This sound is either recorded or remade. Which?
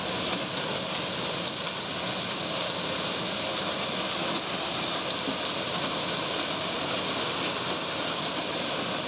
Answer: recorded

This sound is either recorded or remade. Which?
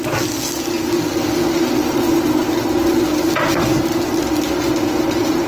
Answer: recorded